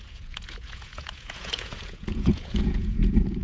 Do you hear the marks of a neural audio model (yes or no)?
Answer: yes